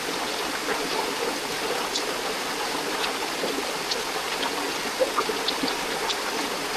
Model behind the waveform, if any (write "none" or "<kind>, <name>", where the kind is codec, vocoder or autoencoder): none